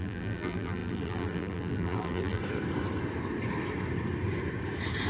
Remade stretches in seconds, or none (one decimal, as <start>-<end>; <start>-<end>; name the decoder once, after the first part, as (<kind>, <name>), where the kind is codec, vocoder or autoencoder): 0.0-2.4 (vocoder, BigVGAN v2)